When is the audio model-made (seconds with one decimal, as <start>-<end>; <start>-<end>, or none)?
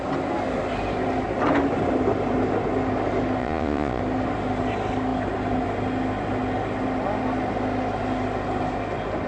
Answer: 3.4-4.0